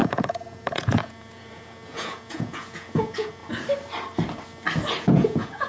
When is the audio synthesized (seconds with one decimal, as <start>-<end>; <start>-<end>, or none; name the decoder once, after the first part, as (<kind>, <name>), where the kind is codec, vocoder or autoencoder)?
0.0-3.4 (vocoder, Vocos); 5.0-5.7